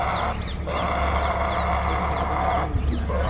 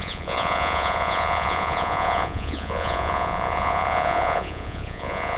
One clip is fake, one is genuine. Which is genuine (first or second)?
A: first